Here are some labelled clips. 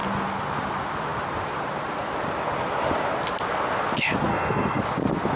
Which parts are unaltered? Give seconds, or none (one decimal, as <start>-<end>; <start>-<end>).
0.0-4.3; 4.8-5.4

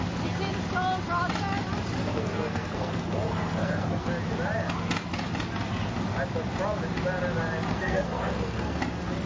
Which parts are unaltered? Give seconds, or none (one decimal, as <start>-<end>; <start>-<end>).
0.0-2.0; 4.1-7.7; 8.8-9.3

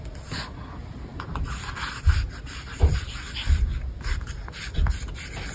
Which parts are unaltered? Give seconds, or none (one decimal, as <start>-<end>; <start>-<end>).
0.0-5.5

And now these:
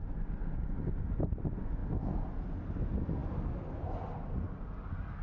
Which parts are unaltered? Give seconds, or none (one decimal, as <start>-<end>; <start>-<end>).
0.0-5.2